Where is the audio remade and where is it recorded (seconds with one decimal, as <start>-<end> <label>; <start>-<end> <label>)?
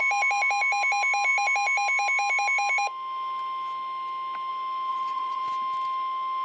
0.0-4.9 recorded; 4.9-5.4 remade; 5.4-6.4 recorded